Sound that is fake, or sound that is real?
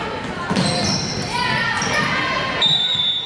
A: real